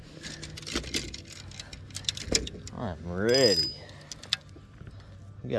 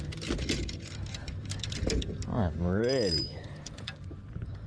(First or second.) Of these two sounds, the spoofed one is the second